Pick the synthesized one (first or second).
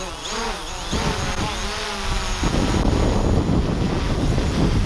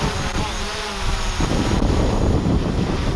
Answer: second